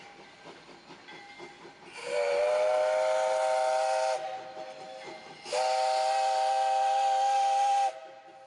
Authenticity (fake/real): real